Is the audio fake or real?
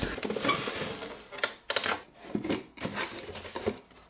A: real